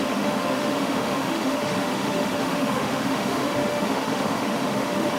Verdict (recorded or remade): remade